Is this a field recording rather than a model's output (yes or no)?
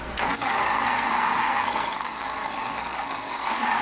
no